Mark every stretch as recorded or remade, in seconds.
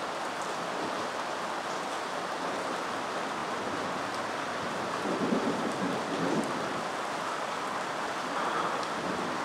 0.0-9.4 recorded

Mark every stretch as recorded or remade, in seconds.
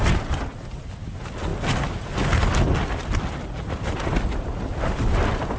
0.0-5.6 recorded